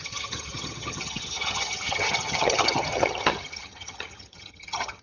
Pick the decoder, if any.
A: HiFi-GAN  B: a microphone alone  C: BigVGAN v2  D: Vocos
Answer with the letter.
A